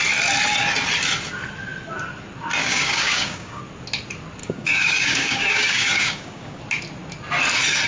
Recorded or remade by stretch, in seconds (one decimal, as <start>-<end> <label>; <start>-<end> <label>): 0.0-2.6 recorded; 2.6-3.6 remade; 3.6-4.4 recorded; 4.4-6.6 remade; 6.6-7.9 recorded